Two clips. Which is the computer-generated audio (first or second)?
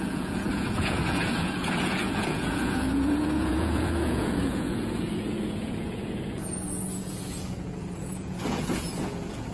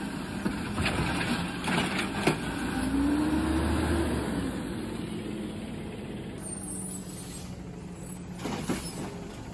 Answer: first